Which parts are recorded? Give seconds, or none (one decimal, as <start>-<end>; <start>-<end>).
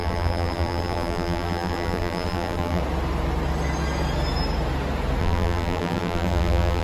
2.8-5.2